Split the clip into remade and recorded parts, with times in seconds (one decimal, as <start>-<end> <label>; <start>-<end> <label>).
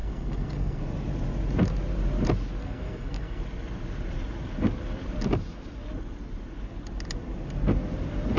0.0-0.8 remade; 0.8-2.6 recorded; 2.6-3.4 remade; 3.4-8.4 recorded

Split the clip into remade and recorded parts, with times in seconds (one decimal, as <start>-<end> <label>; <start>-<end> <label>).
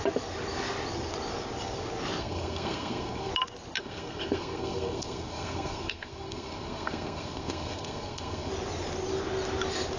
0.0-2.2 recorded; 2.2-3.3 remade; 3.3-3.8 recorded; 3.8-8.5 remade; 8.5-10.0 recorded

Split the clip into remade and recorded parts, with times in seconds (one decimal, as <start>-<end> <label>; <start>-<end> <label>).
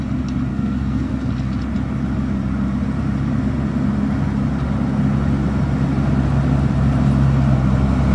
0.0-0.5 recorded; 0.5-1.3 remade; 1.3-8.1 recorded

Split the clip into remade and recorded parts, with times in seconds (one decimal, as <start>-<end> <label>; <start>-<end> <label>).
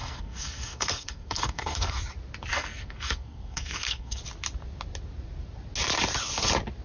0.0-1.9 remade; 1.9-2.5 recorded; 2.5-4.2 remade; 4.2-6.8 recorded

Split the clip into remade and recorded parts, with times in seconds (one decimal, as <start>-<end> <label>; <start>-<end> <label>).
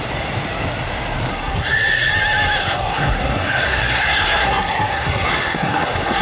0.0-1.3 recorded; 1.3-2.1 remade; 2.1-2.6 recorded; 2.6-6.2 remade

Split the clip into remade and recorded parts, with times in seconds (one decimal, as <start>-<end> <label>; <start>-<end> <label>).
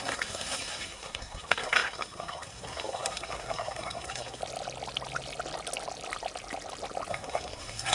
0.0-4.4 remade; 4.4-7.1 recorded; 7.1-7.9 remade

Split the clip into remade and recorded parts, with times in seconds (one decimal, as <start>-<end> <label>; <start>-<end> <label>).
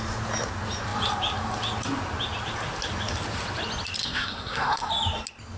0.0-4.0 recorded; 4.0-4.9 remade; 4.9-5.6 recorded